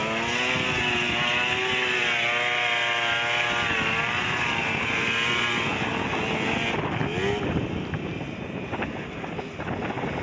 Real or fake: real